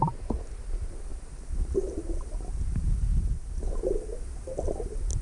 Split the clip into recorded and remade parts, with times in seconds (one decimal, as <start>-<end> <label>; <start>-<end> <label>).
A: 0.0-1.1 recorded; 1.1-4.2 remade; 4.2-5.2 recorded